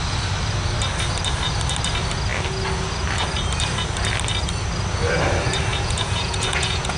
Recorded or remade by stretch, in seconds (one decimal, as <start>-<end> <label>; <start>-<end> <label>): 0.0-5.7 recorded; 5.7-7.0 remade